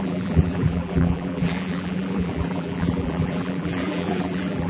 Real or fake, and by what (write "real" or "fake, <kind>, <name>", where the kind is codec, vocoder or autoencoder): fake, vocoder, BigVGAN v2